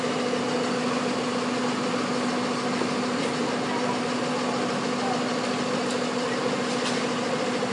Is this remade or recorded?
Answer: recorded